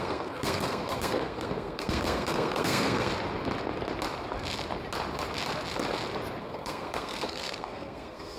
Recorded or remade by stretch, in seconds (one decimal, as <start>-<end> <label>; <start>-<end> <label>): 0.0-3.1 remade; 3.1-6.4 recorded; 6.4-8.4 remade